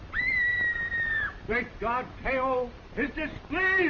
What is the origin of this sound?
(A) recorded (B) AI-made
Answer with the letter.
B